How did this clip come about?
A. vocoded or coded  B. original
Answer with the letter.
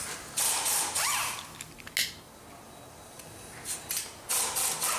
B